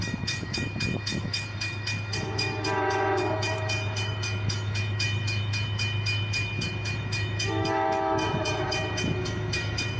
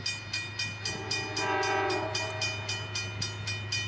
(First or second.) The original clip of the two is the second